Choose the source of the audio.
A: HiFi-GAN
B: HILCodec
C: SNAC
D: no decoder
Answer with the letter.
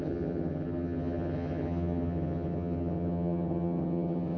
A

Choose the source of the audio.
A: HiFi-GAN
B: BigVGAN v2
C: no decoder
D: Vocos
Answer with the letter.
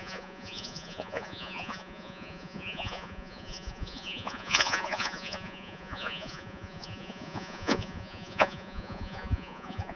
D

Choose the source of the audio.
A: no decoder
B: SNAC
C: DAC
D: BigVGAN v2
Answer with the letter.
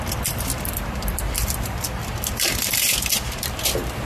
D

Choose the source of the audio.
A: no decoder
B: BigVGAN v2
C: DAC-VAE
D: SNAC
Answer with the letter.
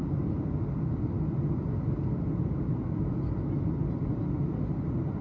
A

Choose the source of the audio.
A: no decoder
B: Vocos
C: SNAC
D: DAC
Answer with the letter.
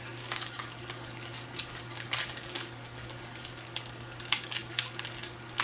D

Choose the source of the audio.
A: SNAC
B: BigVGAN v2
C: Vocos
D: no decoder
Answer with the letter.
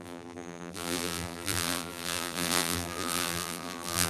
B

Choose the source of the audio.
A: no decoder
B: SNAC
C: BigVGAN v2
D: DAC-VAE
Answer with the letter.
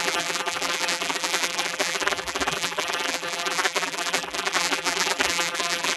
C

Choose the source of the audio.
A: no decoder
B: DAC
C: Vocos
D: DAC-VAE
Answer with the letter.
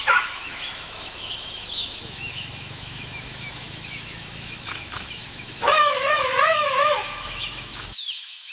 D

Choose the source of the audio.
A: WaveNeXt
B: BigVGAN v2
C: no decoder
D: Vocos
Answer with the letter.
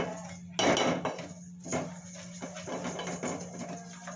C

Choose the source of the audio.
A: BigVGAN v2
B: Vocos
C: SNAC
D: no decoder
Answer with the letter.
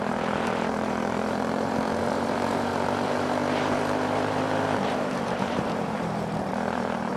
A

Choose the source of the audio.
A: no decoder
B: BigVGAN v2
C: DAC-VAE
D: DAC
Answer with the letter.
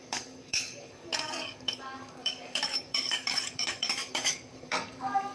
D